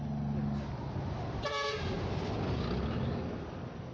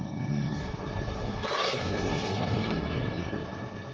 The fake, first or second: second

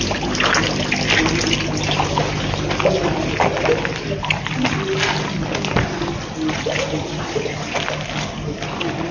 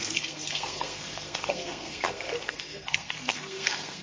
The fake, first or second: second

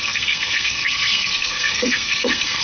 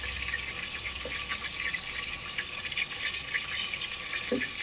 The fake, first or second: first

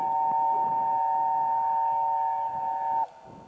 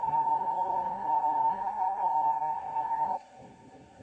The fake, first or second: second